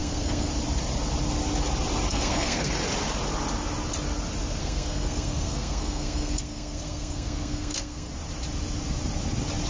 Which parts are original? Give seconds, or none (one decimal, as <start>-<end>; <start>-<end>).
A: 0.5-2.1; 2.7-4.6; 8.1-9.7